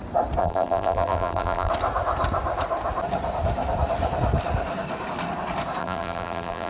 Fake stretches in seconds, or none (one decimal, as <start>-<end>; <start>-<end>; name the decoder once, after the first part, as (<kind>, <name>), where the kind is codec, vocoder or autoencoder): 0.4-1.7 (vocoder, BigVGAN v2); 5.8-6.7